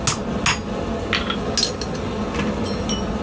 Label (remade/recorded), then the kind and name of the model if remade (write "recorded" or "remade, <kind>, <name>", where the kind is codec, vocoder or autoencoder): recorded